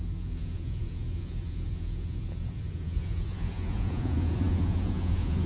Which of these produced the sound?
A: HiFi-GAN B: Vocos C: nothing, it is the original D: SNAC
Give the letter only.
B